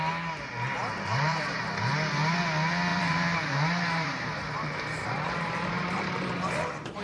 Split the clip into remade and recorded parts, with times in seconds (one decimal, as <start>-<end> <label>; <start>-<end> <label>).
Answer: 0.0-0.8 recorded; 0.8-1.6 remade; 1.6-2.9 recorded; 2.9-6.3 remade; 6.3-7.0 recorded